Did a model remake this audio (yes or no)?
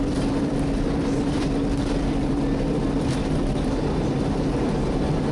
yes